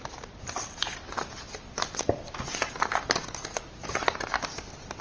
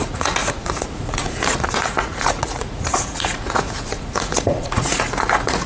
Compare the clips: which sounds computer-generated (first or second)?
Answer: second